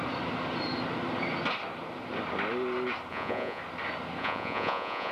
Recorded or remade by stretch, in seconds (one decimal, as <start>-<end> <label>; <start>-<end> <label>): 0.0-3.1 recorded; 3.1-3.6 remade; 3.6-4.2 recorded; 4.2-5.1 remade

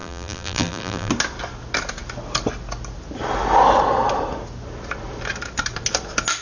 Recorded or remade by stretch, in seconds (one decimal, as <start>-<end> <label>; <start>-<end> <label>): 0.0-1.1 remade; 1.1-6.4 recorded

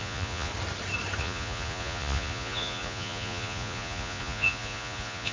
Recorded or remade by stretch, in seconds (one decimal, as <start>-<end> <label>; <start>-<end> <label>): 0.0-0.5 remade; 0.5-1.2 recorded; 1.2-5.3 remade

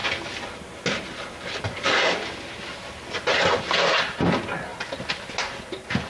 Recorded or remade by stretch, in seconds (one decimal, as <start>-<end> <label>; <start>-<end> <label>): 0.0-6.1 recorded

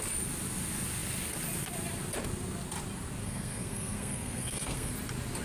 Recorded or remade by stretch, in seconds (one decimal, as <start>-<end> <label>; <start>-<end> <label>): 0.0-3.2 recorded; 3.2-4.9 remade; 4.9-5.4 recorded

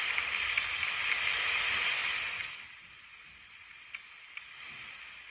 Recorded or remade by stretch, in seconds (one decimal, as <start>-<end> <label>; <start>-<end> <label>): 0.0-5.3 recorded

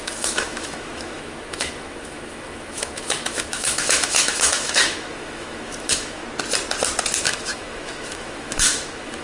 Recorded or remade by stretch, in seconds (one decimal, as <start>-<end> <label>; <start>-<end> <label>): 0.0-6.2 remade; 6.2-7.2 recorded; 7.2-9.2 remade